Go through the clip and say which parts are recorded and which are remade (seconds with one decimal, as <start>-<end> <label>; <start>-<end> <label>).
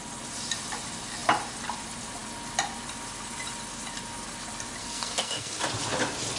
0.0-4.8 recorded; 4.8-5.6 remade; 5.6-6.4 recorded